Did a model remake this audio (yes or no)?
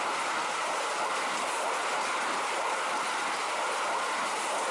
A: no